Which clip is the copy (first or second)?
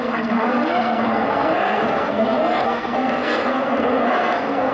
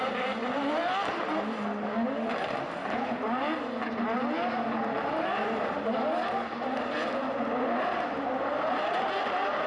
first